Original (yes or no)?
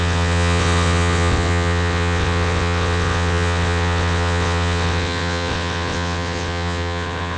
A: no